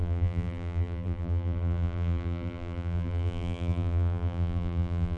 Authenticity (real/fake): fake